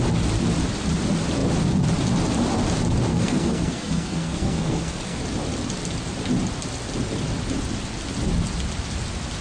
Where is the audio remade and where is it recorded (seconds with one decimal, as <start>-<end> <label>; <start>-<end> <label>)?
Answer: 0.0-3.1 recorded; 3.1-5.2 remade; 5.2-9.4 recorded